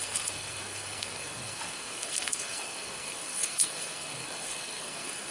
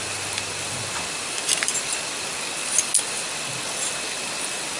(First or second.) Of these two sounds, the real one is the second